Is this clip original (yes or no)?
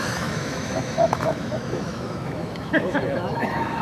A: no